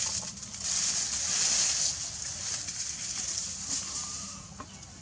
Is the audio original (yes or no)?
yes